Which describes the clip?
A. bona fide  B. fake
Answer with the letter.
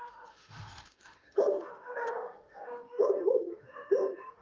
B